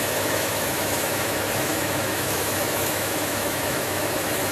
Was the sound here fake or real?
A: fake